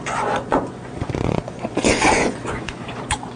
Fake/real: fake